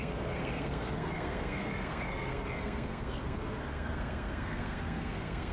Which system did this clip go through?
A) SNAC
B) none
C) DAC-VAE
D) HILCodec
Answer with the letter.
A